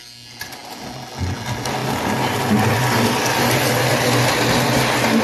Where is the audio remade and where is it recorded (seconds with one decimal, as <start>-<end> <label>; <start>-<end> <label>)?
0.0-5.2 recorded